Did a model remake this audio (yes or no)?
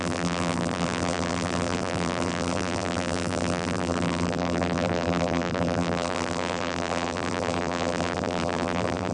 yes